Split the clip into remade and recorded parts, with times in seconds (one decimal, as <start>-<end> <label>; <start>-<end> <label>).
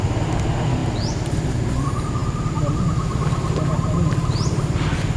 0.0-5.2 recorded